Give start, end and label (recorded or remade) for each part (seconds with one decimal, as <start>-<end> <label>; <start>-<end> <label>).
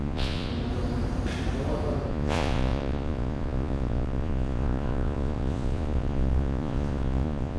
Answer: 0.0-0.5 remade; 0.5-2.1 recorded; 2.1-7.6 remade